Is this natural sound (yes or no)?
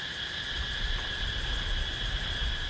yes